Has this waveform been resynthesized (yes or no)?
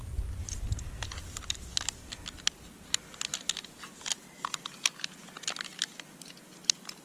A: no